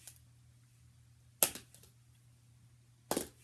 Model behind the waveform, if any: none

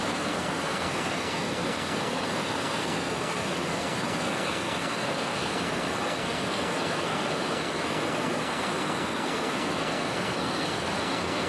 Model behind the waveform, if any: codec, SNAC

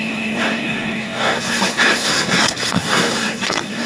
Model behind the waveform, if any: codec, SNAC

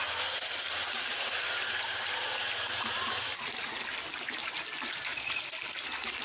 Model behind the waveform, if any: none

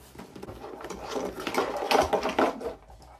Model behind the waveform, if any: none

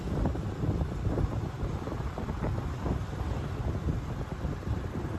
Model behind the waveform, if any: none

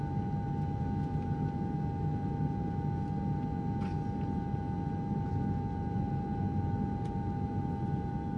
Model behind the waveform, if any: none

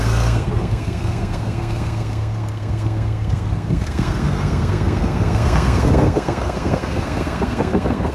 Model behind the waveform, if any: codec, SNAC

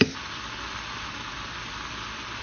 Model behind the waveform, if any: none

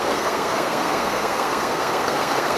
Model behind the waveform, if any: codec, SNAC